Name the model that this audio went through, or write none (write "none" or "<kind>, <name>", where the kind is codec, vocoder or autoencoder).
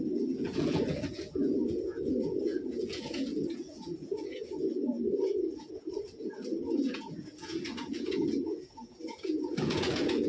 vocoder, Vocos